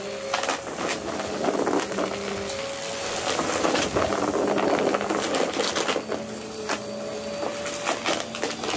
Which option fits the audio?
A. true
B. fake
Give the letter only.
A